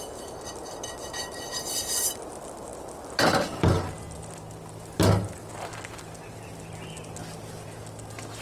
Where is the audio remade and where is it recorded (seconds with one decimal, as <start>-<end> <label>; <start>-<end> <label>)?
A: 0.0-8.4 recorded